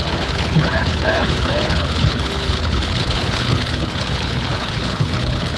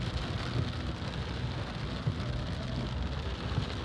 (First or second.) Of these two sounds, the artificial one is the first